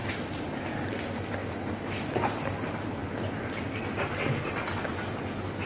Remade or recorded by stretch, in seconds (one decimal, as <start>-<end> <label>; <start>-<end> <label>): 0.0-5.7 recorded